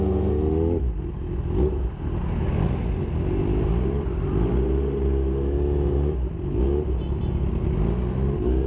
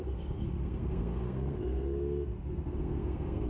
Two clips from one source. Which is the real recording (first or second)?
first